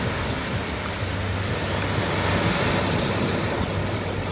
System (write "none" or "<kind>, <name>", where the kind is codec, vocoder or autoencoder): none